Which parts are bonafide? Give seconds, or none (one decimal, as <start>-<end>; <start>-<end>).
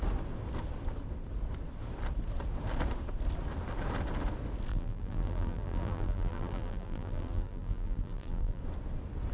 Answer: 0.0-4.7; 8.6-9.3